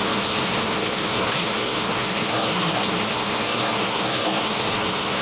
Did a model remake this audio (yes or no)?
yes